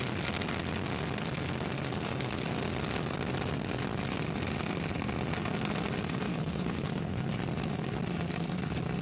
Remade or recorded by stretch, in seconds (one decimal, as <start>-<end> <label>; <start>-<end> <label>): 0.0-6.3 recorded; 6.3-7.3 remade; 7.3-9.0 recorded